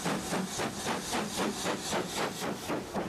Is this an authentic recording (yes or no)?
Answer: yes